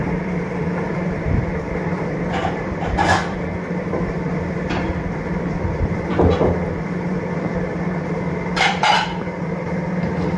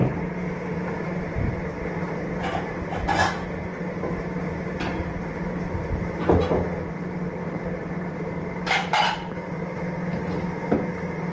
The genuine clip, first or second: second